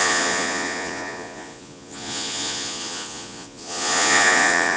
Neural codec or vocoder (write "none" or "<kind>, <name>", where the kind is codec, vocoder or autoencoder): vocoder, Vocos